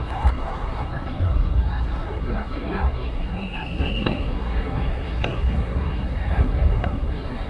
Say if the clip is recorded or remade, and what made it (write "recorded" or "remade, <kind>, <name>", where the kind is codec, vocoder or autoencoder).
remade, codec, SNAC